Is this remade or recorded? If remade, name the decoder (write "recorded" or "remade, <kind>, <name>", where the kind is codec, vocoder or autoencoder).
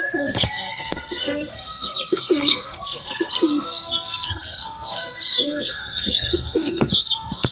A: remade, codec, SNAC